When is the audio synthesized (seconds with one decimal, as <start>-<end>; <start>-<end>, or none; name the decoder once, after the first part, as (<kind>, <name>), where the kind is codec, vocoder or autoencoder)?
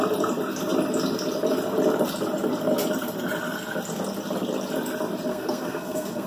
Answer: 5.3-6.3 (codec, SNAC)